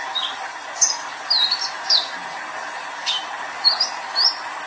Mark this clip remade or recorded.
recorded